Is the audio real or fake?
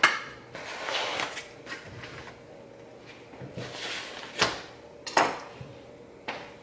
real